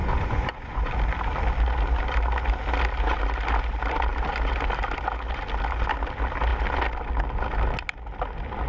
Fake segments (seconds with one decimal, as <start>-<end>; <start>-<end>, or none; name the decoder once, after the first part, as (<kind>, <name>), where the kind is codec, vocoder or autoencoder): 0.0-0.9 (vocoder, Vocos)